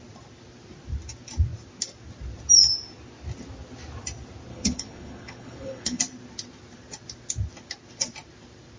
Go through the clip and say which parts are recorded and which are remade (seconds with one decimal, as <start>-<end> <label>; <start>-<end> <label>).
0.0-4.5 recorded; 4.5-6.0 remade; 6.0-8.8 recorded